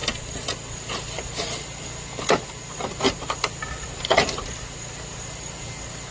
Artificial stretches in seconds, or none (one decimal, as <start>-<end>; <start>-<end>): none

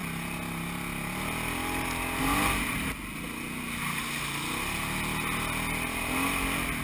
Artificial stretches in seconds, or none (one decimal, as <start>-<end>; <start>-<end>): none

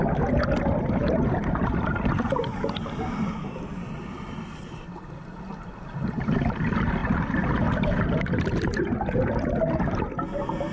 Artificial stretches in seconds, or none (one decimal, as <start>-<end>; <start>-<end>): 1.0-4.0; 7.0-8.2

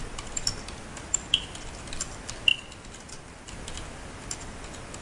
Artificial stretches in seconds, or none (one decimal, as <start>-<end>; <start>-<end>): 2.5-3.5